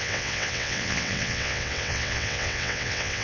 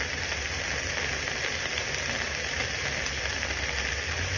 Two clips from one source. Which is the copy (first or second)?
first